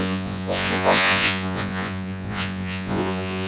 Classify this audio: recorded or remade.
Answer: remade